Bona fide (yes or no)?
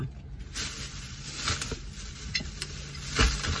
no